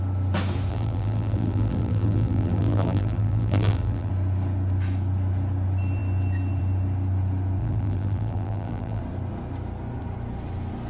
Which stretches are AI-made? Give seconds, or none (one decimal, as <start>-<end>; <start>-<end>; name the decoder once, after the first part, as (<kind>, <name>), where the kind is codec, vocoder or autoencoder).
0.7-4.1 (vocoder, BigVGAN v2); 7.6-9.0